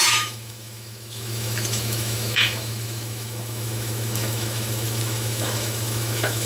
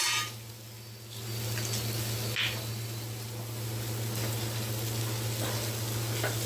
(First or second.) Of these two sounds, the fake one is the first